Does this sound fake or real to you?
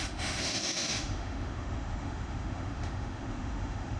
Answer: fake